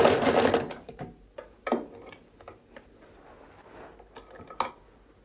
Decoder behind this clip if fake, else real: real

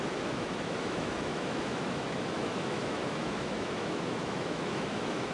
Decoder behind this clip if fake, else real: fake, autoencoder, DAC-VAE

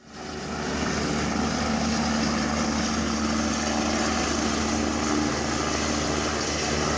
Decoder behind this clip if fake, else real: real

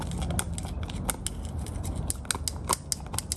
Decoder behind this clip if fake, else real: real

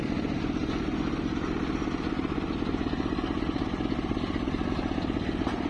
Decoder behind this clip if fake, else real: real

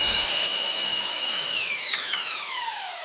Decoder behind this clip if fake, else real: fake, autoencoder, DAC-VAE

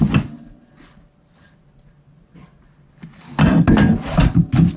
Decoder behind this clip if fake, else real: real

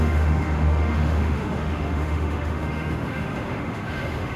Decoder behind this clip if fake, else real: fake, autoencoder, DAC-VAE